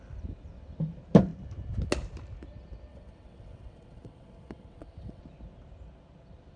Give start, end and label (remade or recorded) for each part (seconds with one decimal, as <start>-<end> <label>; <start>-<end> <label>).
0.0-2.9 recorded; 2.9-5.2 remade; 5.2-6.6 recorded